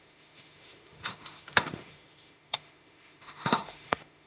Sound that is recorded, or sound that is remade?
remade